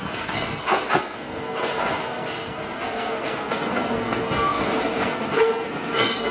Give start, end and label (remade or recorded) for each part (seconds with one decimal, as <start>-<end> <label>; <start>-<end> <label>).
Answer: 0.0-6.3 remade